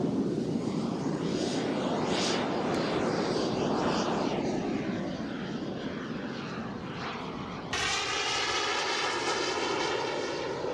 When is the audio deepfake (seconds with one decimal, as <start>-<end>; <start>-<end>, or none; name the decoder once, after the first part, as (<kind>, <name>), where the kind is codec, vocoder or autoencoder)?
none